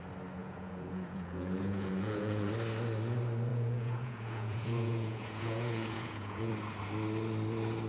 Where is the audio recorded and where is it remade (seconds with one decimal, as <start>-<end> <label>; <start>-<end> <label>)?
0.0-0.4 recorded; 0.4-2.5 remade; 2.5-3.5 recorded; 3.5-6.5 remade; 6.5-7.9 recorded